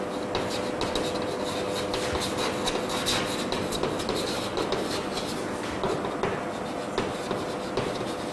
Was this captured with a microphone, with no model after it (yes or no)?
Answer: yes